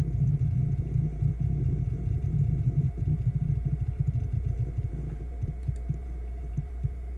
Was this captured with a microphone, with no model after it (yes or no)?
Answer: no